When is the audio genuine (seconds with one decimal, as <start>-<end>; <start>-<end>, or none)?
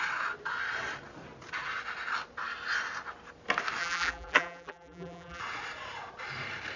0.0-3.8; 5.4-6.8